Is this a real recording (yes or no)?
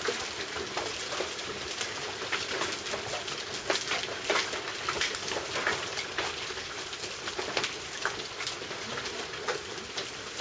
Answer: yes